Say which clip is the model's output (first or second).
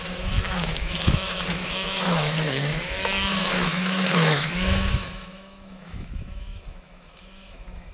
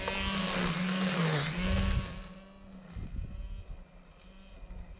first